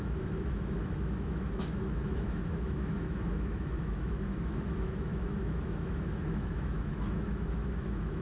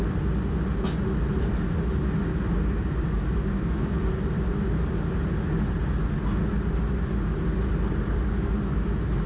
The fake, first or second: first